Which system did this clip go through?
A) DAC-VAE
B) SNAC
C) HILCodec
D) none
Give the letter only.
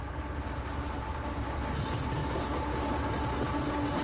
D